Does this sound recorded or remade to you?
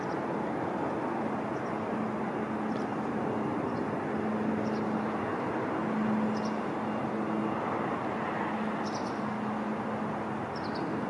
recorded